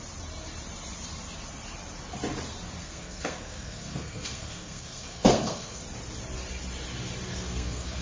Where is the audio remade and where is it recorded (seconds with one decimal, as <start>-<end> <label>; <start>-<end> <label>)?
0.0-2.8 recorded; 2.8-5.8 remade; 5.8-7.3 recorded; 7.3-8.0 remade